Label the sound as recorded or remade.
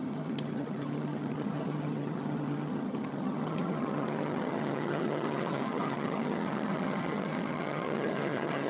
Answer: remade